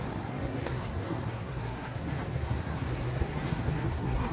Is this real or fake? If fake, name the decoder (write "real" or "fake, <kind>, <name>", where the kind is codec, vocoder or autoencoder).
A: fake, codec, SNAC